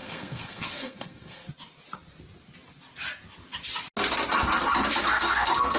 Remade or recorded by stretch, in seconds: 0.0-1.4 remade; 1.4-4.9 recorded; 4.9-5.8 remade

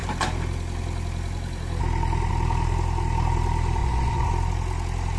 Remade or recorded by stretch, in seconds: 0.0-3.8 recorded; 3.8-4.3 remade; 4.3-5.2 recorded

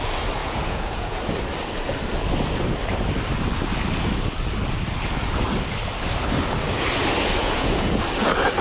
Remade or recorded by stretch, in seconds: 0.0-0.4 recorded; 0.4-1.2 remade; 1.2-7.4 recorded; 7.4-8.0 remade; 8.0-8.6 recorded

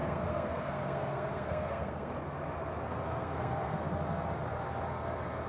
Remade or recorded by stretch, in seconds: 0.0-2.1 remade; 2.1-2.9 recorded; 2.9-3.8 remade; 3.8-5.5 recorded

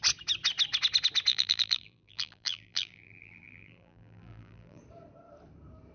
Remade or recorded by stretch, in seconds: 0.0-1.3 recorded; 1.3-4.8 remade; 4.8-5.9 recorded

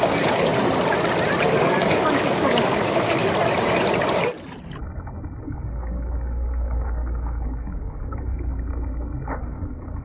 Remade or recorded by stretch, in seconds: 0.0-0.5 remade; 0.5-1.6 recorded; 1.6-3.2 remade; 3.2-5.4 recorded; 5.4-8.5 remade; 8.5-9.3 recorded; 9.3-10.0 remade